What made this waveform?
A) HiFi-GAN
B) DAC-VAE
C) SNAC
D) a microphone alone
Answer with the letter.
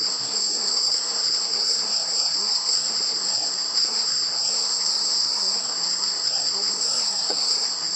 C